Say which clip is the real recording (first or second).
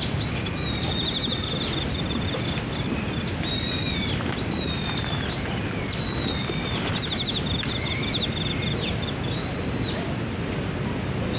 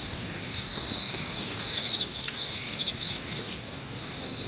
first